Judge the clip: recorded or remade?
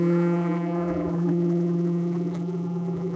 remade